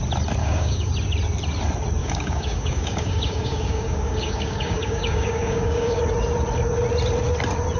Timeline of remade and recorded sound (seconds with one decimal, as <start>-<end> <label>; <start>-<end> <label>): 0.0-0.4 recorded; 0.4-0.9 remade; 0.9-2.0 recorded; 2.0-6.0 remade; 6.0-7.8 recorded